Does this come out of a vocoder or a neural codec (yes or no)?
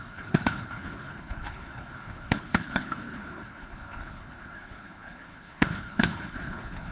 yes